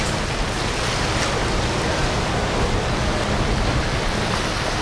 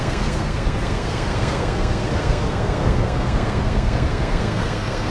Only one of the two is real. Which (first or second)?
first